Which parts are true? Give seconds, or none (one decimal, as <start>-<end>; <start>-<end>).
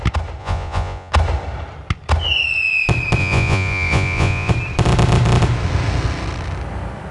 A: 0.0-0.4; 1.1-3.2; 4.5-7.1